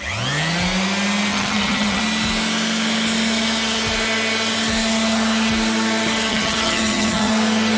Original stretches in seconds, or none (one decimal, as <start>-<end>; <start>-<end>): 0.0-1.3; 2.0-6.3; 7.3-7.8